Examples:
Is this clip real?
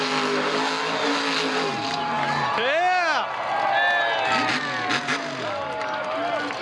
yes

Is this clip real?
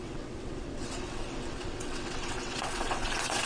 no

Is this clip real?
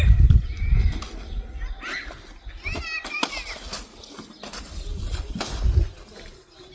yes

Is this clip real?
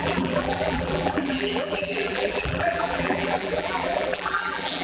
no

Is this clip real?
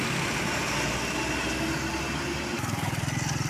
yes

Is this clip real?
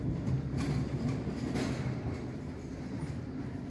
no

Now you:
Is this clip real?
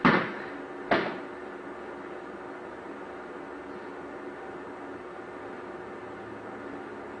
yes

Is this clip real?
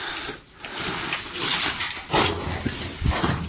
yes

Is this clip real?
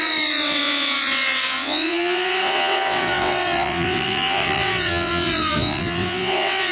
no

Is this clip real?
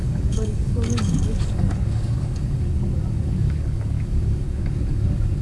no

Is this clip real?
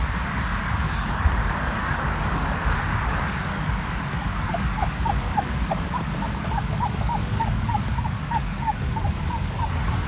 no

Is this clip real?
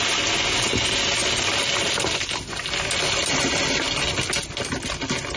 yes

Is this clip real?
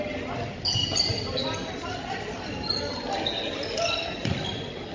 yes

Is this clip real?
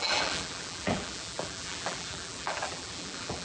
no